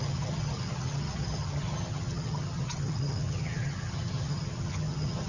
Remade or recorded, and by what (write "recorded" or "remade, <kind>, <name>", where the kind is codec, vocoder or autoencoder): remade, vocoder, HiFi-GAN